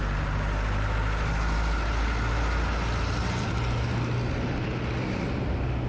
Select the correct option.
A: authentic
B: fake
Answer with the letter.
A